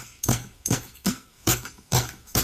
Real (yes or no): no